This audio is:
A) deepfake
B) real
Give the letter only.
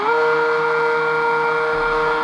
B